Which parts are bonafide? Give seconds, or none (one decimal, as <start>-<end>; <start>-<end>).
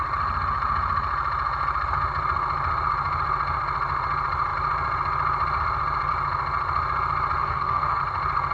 0.0-7.4; 8.0-8.5